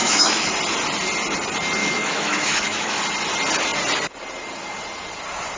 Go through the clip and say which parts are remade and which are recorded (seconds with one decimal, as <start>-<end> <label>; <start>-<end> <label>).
0.0-0.5 remade; 0.5-1.8 recorded; 1.8-3.0 remade; 3.0-5.6 recorded